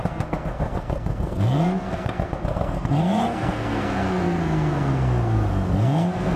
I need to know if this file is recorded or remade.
remade